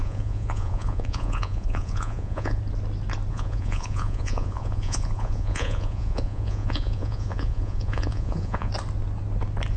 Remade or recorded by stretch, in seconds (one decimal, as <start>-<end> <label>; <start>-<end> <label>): 0.0-2.6 remade; 2.6-3.3 recorded; 3.3-8.7 remade; 8.7-9.8 recorded